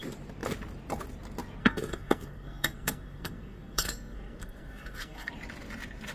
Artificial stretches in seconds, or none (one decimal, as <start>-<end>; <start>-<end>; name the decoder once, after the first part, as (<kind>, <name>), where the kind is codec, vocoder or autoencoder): 1.6-5.3 (codec, SNAC)